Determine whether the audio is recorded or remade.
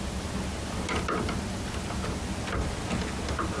recorded